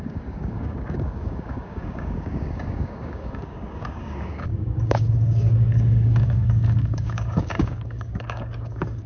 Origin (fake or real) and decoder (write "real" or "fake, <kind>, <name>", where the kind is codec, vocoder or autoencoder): fake, codec, DAC